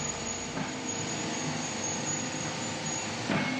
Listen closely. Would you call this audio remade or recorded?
recorded